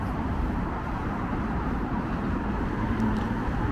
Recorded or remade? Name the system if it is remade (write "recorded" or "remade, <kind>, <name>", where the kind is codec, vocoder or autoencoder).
remade, vocoder, BigVGAN v2